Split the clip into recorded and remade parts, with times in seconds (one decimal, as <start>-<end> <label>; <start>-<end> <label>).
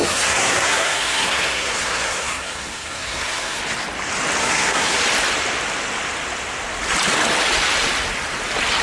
0.0-3.6 remade; 3.6-4.4 recorded; 4.4-5.0 remade; 5.0-8.8 recorded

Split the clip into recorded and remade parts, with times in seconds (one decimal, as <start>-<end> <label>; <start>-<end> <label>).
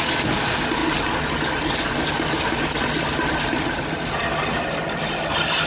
0.0-5.7 recorded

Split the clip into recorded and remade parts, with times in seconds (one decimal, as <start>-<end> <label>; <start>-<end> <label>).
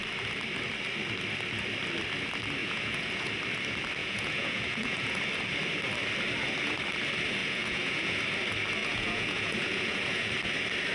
0.0-2.6 recorded; 2.6-3.3 remade; 3.3-4.0 recorded; 4.0-5.2 remade; 5.2-7.4 recorded; 7.4-8.2 remade; 8.2-8.8 recorded; 8.8-10.3 remade; 10.3-10.9 recorded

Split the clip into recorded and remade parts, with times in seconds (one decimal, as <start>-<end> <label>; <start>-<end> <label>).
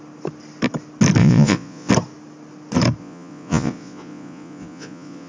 0.0-1.2 recorded; 1.2-1.9 remade; 1.9-3.0 recorded; 3.0-5.3 remade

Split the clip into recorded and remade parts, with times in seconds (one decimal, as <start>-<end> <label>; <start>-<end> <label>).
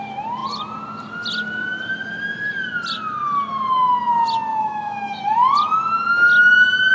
0.0-4.5 recorded; 4.5-5.2 remade; 5.2-6.9 recorded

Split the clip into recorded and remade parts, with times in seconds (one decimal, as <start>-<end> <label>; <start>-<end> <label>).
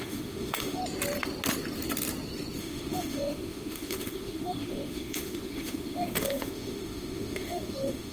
0.0-0.8 remade; 0.8-2.6 recorded; 2.6-8.1 remade